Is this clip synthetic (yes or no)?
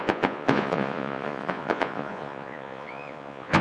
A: yes